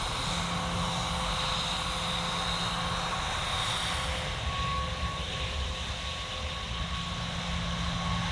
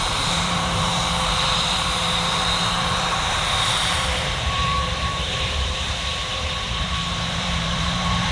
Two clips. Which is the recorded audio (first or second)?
first